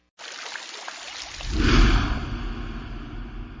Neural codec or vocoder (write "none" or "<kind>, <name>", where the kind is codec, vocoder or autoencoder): none